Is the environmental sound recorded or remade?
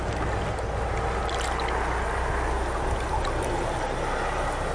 recorded